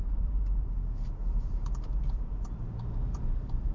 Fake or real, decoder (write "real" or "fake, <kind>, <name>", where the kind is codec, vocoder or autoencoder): fake, vocoder, BigVGAN v2